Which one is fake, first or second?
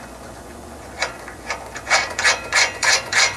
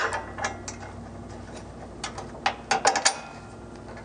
first